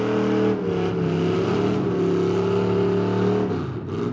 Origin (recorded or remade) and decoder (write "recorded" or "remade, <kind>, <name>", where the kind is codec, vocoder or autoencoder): recorded